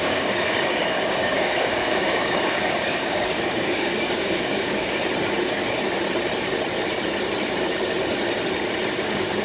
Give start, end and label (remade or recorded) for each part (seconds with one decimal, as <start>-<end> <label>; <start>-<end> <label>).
0.0-5.0 remade; 5.0-9.0 recorded; 9.0-9.4 remade